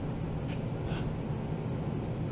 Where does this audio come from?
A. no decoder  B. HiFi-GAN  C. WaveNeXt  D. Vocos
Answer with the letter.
A